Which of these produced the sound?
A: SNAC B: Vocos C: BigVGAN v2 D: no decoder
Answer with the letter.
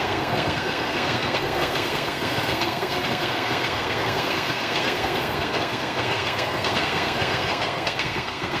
A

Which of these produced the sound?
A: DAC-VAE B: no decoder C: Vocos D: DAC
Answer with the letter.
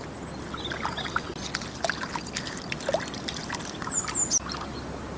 B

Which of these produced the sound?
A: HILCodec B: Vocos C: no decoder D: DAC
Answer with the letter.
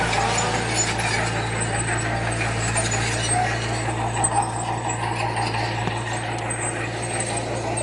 C